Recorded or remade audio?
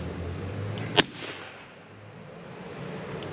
recorded